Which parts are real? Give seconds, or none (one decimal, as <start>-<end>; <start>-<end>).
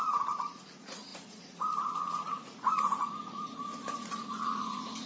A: none